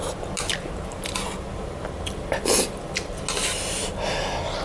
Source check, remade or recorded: recorded